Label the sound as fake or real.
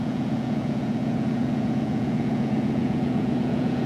fake